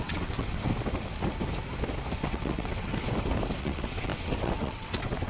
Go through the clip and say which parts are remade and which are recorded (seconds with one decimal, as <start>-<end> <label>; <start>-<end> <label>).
0.0-0.7 remade; 0.7-2.2 recorded; 2.2-2.9 remade; 2.9-3.6 recorded; 3.6-5.3 remade